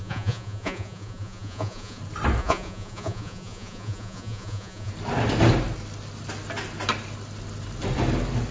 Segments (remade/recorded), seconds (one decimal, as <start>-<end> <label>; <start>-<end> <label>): 0.0-2.0 remade; 2.0-2.4 recorded; 2.4-4.9 remade; 4.9-8.5 recorded